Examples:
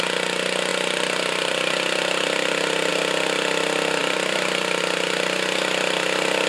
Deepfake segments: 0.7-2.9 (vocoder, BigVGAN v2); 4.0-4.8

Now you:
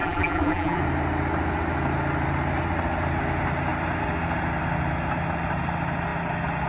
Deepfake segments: 0.0-0.8 (vocoder, BigVGAN v2)

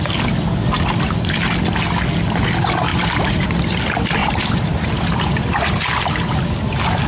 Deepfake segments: 2.9-3.5 (vocoder, BigVGAN v2); 4.2-5.3

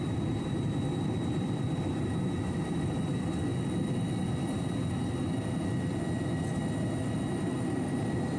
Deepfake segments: 0.0-3.5 (vocoder, BigVGAN v2); 7.4-8.4